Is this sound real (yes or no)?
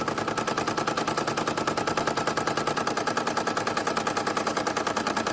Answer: yes